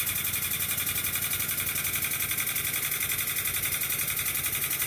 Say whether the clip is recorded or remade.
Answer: recorded